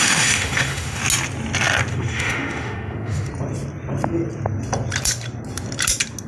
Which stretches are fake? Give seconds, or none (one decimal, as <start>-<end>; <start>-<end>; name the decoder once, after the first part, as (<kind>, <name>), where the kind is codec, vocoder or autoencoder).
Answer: 0.0-1.0 (autoencoder, DAC-VAE); 1.9-3.3